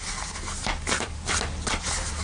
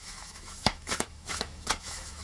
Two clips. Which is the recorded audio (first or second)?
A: first